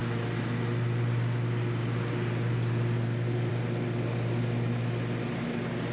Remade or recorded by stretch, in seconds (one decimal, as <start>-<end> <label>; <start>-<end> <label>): 0.0-5.9 recorded